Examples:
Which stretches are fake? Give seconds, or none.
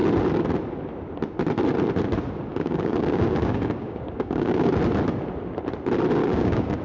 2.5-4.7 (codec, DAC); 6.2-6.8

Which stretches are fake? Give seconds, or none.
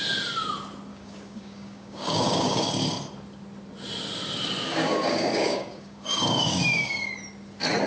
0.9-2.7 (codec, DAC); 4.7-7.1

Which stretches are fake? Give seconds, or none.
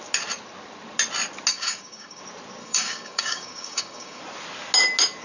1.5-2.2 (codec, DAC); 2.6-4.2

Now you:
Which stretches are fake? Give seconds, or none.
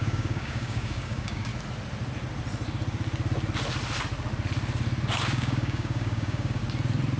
0.0-1.5 (codec, DAC); 5.2-6.6